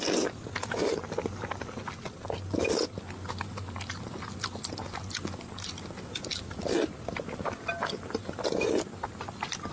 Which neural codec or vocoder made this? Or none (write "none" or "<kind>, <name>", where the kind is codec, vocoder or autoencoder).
none